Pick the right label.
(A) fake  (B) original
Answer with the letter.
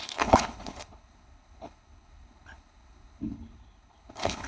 A